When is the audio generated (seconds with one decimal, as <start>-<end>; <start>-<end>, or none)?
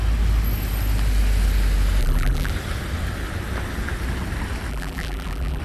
2.0-2.5; 4.7-5.6